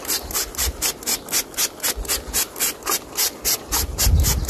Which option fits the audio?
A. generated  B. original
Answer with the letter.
B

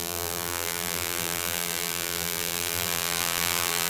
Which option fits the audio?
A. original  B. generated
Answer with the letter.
B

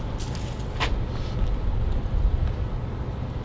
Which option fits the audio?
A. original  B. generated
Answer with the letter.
A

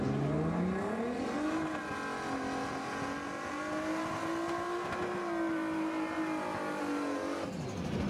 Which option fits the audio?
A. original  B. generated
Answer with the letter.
A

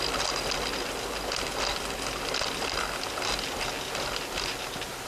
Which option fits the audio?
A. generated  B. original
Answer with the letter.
B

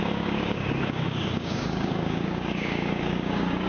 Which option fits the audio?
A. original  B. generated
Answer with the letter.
B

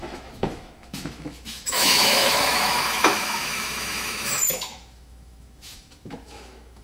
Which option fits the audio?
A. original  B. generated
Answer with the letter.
B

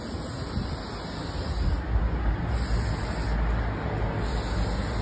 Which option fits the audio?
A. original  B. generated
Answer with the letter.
A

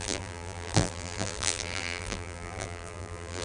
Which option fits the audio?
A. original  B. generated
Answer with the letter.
B